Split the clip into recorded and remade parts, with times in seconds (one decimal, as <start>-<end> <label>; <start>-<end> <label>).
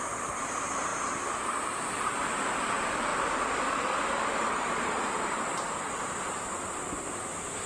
0.0-0.9 remade; 0.9-1.8 recorded; 1.8-7.7 remade